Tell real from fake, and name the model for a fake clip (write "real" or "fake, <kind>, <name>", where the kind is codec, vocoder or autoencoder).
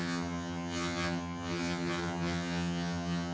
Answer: fake, vocoder, HiFi-GAN